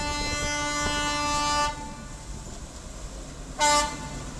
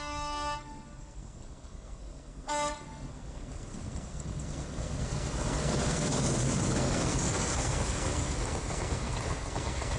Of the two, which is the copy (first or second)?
second